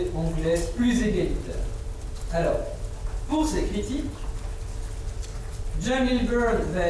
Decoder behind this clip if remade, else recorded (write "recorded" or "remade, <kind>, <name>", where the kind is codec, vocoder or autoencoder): recorded